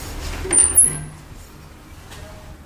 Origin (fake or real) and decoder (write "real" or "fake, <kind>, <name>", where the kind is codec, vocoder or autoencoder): real